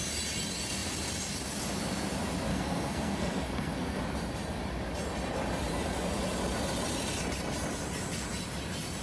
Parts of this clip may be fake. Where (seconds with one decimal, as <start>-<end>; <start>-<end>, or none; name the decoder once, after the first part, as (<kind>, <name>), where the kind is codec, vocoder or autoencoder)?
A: 2.5-4.0 (codec, SNAC)